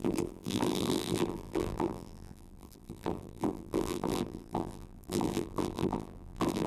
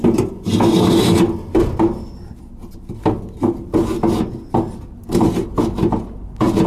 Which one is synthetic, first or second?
first